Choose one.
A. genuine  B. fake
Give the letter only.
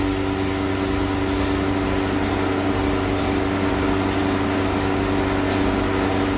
A